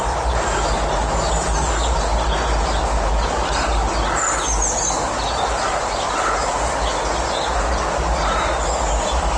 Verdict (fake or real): real